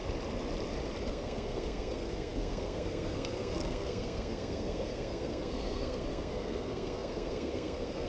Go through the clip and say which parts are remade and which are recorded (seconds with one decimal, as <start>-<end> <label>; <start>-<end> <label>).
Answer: 0.0-1.1 recorded; 1.1-8.1 remade